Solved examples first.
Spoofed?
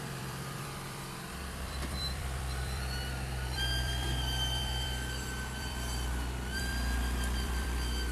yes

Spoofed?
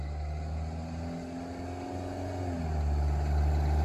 no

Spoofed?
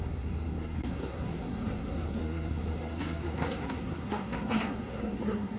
yes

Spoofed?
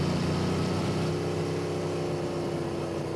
no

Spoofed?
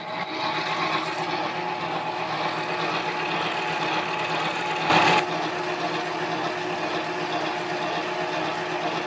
no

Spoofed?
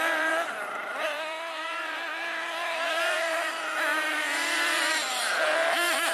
yes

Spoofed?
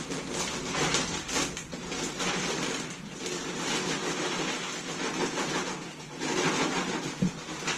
no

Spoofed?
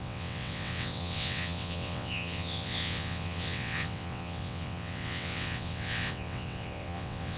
yes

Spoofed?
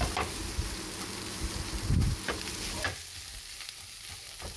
no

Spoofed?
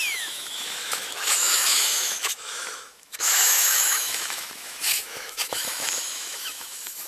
yes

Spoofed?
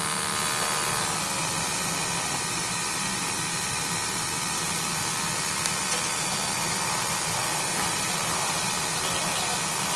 no